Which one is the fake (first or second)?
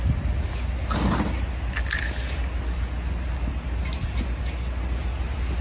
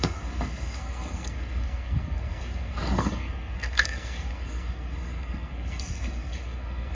second